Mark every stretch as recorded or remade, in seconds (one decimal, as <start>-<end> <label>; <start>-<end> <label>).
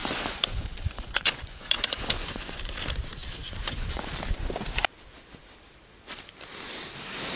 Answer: 0.0-2.6 remade; 2.6-3.4 recorded; 3.4-4.1 remade; 4.1-7.4 recorded